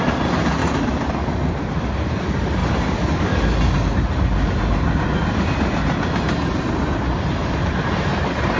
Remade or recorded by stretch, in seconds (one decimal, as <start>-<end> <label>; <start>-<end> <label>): 0.0-0.6 recorded; 0.6-2.2 remade; 2.2-7.4 recorded; 7.4-8.6 remade